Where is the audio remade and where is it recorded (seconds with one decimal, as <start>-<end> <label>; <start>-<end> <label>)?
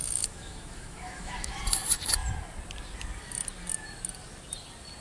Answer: 0.0-1.6 remade; 1.6-5.0 recorded